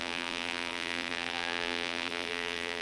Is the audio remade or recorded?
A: remade